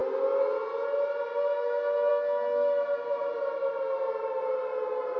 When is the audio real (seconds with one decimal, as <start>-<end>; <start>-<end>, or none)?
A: 0.0-5.2